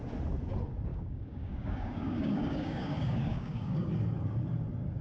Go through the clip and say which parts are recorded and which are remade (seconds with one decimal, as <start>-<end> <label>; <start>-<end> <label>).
0.0-0.9 recorded; 0.9-3.9 remade; 3.9-5.0 recorded